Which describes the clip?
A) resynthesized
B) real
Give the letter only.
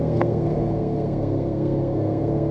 A